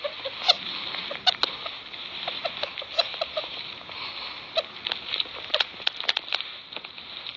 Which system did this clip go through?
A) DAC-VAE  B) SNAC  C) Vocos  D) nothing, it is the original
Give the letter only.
D